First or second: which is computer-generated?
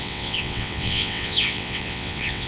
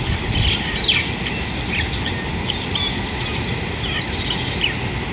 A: first